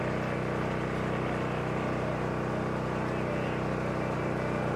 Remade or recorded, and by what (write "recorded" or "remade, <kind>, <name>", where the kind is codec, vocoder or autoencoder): recorded